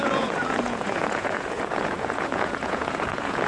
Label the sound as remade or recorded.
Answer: remade